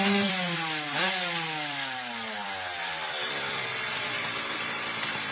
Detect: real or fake fake